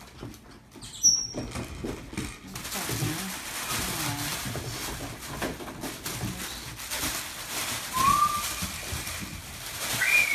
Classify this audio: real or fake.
real